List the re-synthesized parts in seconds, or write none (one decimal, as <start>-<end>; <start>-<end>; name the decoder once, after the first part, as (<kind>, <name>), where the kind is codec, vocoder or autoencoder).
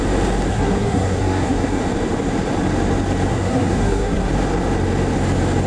0.5-1.8 (codec, SNAC); 3.3-4.3